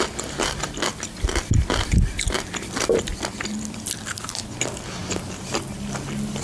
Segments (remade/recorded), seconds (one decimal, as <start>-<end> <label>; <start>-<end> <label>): 0.0-6.4 recorded